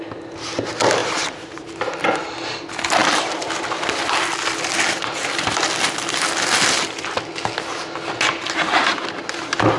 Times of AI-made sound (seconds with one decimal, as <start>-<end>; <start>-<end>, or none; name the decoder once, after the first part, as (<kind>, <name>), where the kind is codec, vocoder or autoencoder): 1.0-1.6 (vocoder, BigVGAN v2)